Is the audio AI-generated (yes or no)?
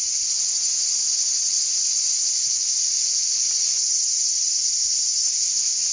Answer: no